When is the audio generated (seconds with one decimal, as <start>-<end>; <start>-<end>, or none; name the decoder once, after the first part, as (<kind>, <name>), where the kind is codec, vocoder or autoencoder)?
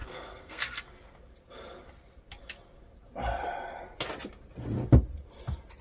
0.0-0.8 (codec, SNAC)